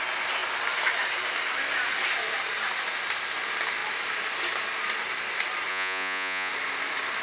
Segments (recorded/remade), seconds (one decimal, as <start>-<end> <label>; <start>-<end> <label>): 0.0-5.7 recorded; 5.7-6.5 remade; 6.5-7.2 recorded